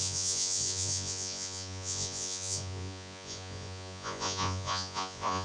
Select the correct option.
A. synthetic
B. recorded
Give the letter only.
A